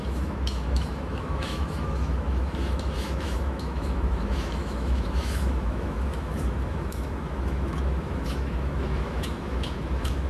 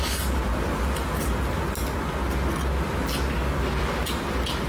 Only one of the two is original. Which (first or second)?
second